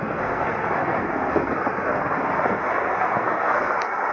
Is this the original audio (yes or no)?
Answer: no